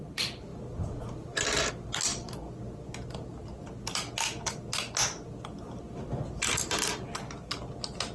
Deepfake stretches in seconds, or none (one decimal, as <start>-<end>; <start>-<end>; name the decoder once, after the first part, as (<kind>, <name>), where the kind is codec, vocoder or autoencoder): none